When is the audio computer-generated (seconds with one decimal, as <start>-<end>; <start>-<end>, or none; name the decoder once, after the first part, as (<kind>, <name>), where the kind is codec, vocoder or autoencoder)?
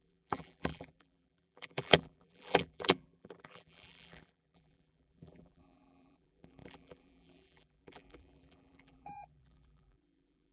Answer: 0.0-10.5 (vocoder, BigVGAN v2)